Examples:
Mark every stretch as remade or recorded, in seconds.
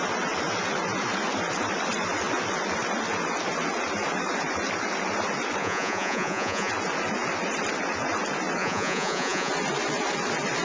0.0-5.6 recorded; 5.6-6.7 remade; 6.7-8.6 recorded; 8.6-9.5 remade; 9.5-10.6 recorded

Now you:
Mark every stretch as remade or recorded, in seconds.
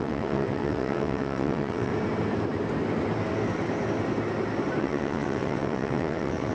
0.0-1.9 remade; 1.9-4.8 recorded; 4.8-6.5 remade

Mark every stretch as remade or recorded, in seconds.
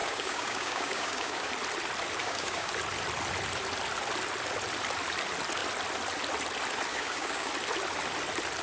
0.0-1.5 remade; 1.5-2.2 recorded; 2.2-2.7 remade; 2.7-6.9 recorded; 6.9-7.5 remade; 7.5-8.6 recorded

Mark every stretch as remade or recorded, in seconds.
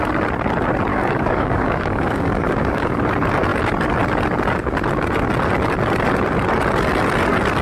0.0-0.9 recorded; 0.9-3.0 remade; 3.0-7.6 recorded